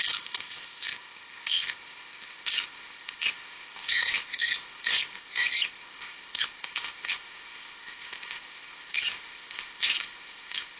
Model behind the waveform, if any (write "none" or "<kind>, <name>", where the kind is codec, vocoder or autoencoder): codec, ZipCodec